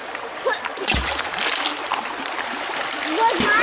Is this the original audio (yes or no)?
yes